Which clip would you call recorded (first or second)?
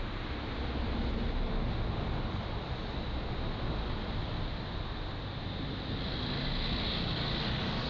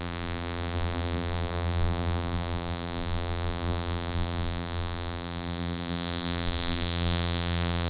first